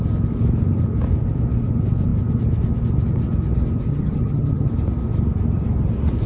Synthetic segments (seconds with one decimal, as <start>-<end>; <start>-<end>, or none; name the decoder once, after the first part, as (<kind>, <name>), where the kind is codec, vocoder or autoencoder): 3.9-4.7 (vocoder, HiFi-GAN)